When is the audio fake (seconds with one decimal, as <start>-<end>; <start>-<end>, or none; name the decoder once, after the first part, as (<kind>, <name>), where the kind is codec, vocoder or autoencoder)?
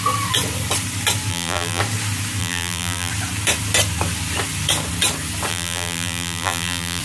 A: 1.3-1.8 (vocoder, BigVGAN v2); 2.4-3.1; 5.5-7.0